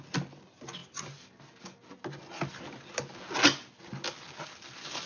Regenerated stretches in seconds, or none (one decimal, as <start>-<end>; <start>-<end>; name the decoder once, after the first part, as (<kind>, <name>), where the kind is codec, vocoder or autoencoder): none

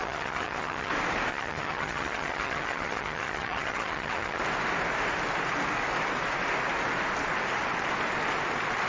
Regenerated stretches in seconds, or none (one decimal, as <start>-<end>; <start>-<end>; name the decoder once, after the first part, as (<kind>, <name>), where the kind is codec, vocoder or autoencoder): 0.0-0.9 (vocoder, HiFi-GAN); 1.3-4.4

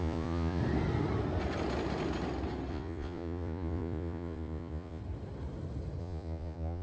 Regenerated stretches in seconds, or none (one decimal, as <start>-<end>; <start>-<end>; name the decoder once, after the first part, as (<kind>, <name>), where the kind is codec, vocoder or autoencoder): 0.0-0.6 (vocoder, Vocos); 2.7-5.0; 6.0-6.8

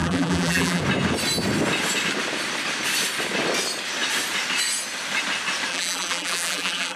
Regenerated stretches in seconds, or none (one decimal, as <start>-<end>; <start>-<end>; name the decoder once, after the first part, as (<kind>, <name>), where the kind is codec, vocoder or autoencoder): 0.0-0.8 (vocoder, BigVGAN v2); 5.7-7.0

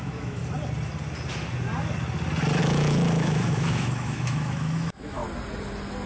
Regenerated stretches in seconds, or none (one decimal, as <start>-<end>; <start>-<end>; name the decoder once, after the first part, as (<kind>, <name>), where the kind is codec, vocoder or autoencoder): 0.0-0.4 (autoencoder, DAC-VAE); 2.6-5.2

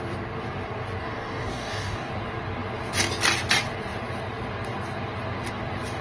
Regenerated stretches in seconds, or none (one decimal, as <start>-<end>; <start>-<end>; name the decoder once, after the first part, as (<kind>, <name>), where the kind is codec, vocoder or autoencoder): 1.0-2.1 (codec, DAC)

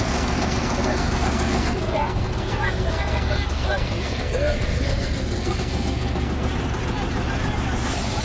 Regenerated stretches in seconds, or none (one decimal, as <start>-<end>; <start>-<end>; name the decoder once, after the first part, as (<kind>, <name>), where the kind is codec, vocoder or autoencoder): 0.0-6.5 (codec, SNAC)

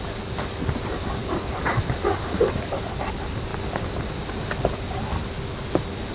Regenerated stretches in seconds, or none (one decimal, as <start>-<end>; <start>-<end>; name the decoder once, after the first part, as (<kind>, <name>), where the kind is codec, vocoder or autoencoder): none